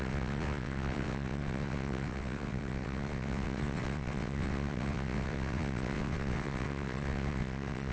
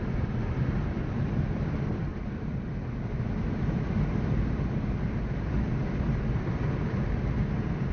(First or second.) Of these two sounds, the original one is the second